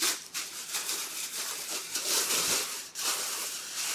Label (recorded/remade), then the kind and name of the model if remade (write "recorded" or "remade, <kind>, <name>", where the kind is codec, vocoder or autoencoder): remade, vocoder, BigVGAN v2